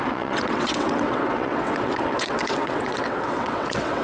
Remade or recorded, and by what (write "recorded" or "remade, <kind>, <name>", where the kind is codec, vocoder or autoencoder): remade, vocoder, WaveNeXt